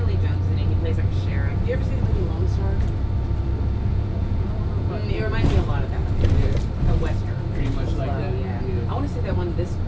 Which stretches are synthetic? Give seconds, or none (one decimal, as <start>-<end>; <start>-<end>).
3.9-4.9